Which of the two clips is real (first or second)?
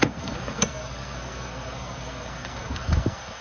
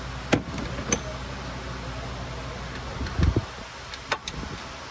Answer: second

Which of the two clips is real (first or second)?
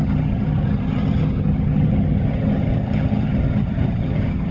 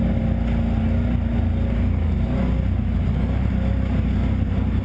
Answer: second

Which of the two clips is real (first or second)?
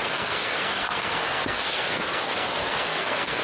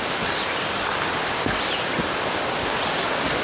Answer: second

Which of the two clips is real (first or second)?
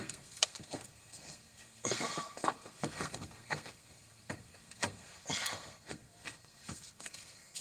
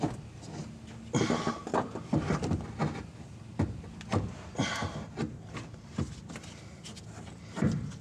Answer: second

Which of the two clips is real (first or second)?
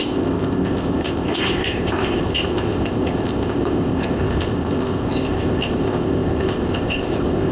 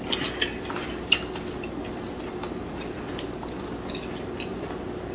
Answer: second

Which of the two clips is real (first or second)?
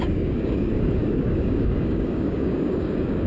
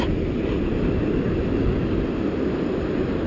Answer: second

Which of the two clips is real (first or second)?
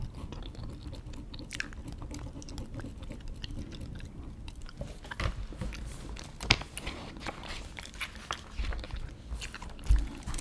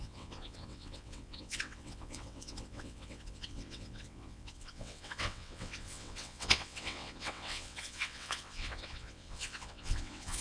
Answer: first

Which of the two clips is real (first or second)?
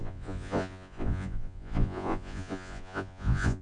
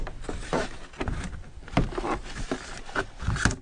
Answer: second